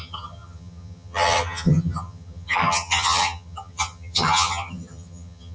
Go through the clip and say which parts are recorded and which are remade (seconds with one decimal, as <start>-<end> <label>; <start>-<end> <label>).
0.0-5.5 remade